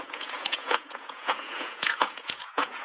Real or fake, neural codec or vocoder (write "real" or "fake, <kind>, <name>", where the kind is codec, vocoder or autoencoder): fake, vocoder, Vocos